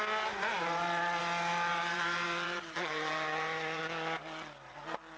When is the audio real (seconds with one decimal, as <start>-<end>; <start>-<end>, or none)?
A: 0.0-0.5; 1.2-1.7; 3.8-5.2